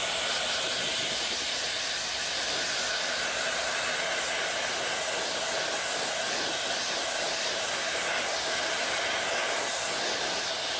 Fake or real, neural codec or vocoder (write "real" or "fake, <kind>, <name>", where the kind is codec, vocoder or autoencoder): real